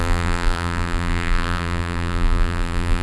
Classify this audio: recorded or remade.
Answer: remade